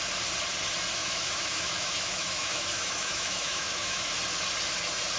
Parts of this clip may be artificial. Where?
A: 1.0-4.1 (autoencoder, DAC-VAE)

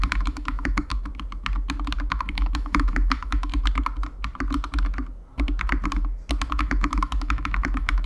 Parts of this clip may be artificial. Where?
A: 0.0-0.9 (autoencoder, DAC-VAE); 2.1-3.5; 6.5-8.1

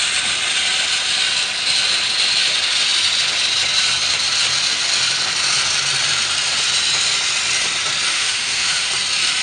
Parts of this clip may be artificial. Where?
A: 8.1-8.9 (autoencoder, DAC-VAE)

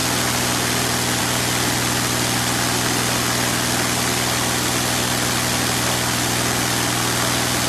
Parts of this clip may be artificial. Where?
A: none